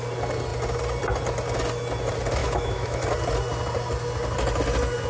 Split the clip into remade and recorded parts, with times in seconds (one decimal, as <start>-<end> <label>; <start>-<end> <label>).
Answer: 0.0-2.4 recorded; 2.4-3.0 remade; 3.0-5.1 recorded